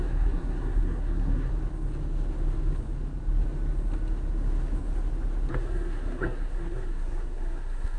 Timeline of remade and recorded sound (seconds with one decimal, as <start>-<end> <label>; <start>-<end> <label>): 0.0-1.5 remade; 1.5-5.5 recorded; 5.5-8.0 remade